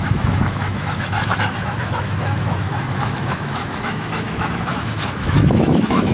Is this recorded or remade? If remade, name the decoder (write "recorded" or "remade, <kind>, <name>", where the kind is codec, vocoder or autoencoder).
remade, autoencoder, DAC-VAE